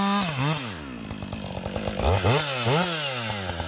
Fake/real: real